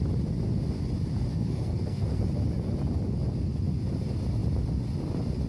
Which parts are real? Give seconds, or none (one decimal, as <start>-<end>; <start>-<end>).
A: 0.0-1.3; 2.2-5.5